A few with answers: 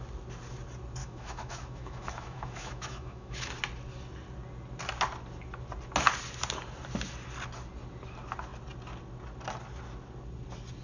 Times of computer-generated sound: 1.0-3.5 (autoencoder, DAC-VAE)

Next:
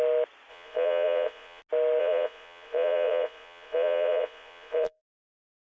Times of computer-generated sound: 0.5-1.6 (vocoder, Vocos); 2.0-5.0

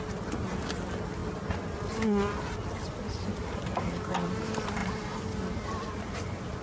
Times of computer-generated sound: none